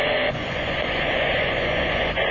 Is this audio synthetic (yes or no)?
yes